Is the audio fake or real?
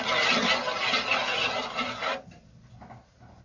real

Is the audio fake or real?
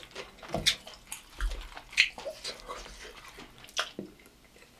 real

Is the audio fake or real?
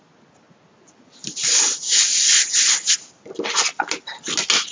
real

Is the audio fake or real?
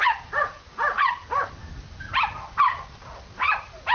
real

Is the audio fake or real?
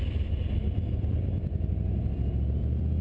fake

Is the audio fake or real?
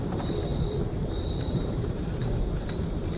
fake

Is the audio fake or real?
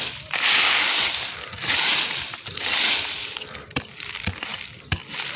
real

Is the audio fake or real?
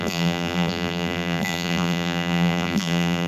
fake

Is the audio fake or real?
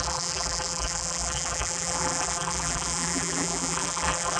fake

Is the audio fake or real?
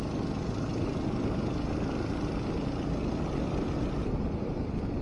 real